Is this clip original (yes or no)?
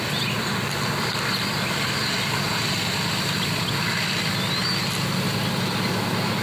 yes